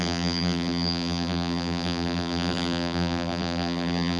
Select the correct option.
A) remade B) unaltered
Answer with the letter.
A